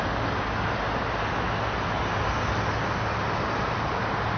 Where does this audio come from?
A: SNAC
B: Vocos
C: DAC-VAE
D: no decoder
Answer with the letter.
D